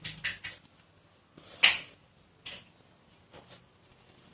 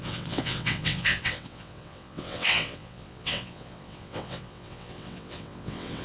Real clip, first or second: first